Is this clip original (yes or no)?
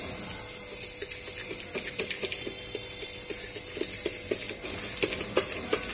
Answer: yes